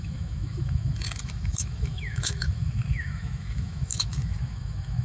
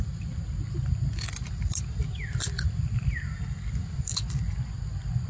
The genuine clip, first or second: second